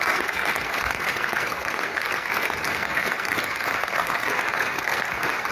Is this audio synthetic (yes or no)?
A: yes